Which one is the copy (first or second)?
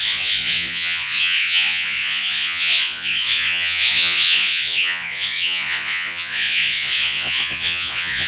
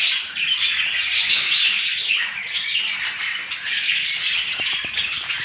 first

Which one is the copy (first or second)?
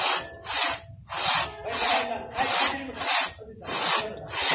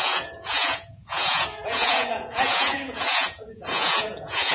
second